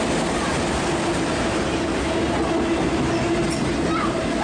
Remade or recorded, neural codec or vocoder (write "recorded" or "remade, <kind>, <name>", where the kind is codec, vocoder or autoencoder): recorded